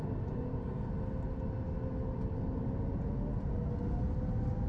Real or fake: real